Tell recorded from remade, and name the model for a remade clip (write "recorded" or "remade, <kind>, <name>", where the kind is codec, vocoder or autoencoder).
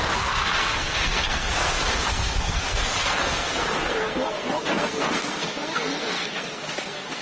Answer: remade, codec, SNAC